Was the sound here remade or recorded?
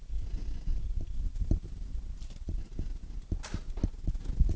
recorded